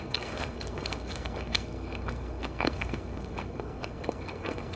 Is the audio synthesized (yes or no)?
yes